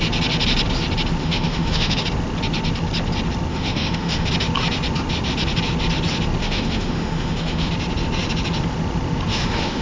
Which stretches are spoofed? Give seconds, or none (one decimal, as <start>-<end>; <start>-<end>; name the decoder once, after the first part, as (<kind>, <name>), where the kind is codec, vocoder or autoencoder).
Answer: 1.2-2.0 (autoencoder, DAC-VAE); 3.5-4.3; 6.4-7.7; 9.3-9.8